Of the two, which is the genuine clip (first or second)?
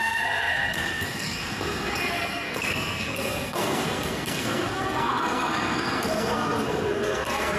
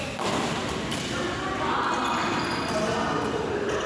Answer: second